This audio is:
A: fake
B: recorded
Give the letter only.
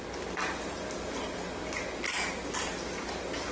B